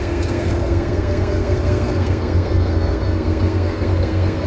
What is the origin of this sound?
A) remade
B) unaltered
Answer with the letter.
A